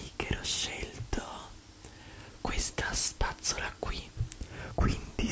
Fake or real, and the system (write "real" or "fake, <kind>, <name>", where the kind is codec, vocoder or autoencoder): real